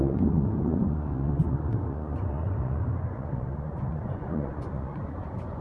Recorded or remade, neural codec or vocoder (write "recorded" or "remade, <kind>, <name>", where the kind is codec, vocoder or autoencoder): remade, vocoder, Vocos